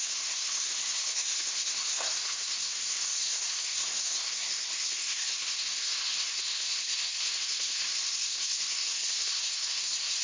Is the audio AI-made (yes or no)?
yes